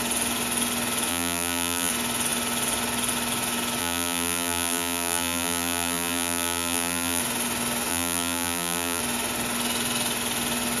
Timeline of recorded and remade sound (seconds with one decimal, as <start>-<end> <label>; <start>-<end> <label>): 0.0-1.1 recorded; 1.1-1.9 remade; 1.9-3.8 recorded; 3.8-7.2 remade; 7.2-7.9 recorded; 7.9-9.0 remade; 9.0-10.8 recorded